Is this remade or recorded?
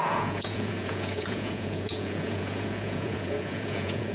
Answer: remade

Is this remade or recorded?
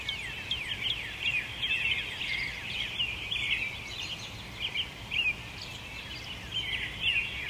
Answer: recorded